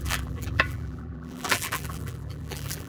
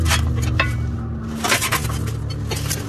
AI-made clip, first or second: first